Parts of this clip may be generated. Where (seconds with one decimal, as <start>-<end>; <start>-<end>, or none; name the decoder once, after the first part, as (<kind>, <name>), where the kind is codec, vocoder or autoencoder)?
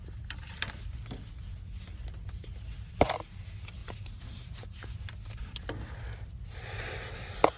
3.8-5.4 (vocoder, BigVGAN v2)